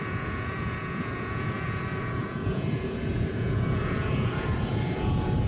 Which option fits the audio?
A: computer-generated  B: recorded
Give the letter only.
A